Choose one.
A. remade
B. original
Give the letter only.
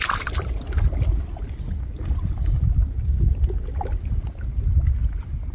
B